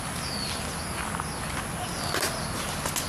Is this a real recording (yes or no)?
yes